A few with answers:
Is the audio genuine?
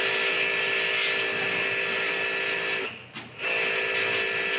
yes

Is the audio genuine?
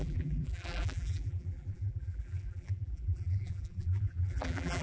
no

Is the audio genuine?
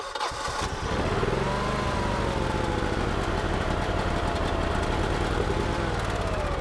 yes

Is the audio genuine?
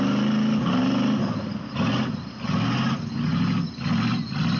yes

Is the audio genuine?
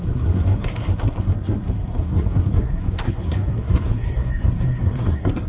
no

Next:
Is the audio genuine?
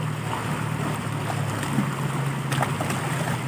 yes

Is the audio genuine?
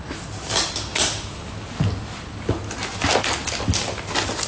yes